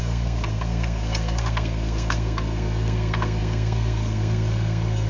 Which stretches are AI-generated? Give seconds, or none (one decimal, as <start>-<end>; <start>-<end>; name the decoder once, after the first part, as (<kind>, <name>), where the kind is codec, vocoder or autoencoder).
0.0-5.1 (codec, SNAC)